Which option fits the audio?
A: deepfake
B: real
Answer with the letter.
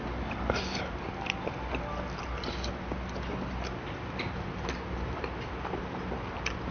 B